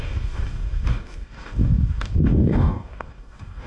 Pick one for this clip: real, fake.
fake